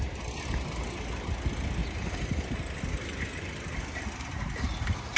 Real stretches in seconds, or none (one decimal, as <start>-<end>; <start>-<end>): 0.0-5.2